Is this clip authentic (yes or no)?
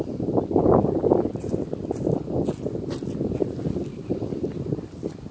yes